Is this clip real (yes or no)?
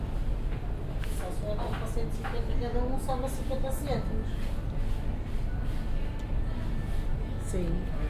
yes